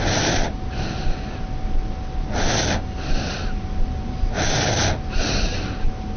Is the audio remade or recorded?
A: recorded